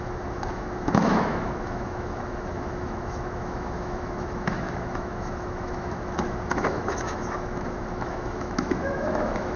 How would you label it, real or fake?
fake